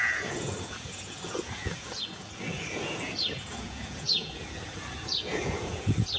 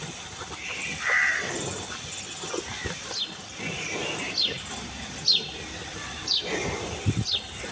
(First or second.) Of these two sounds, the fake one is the first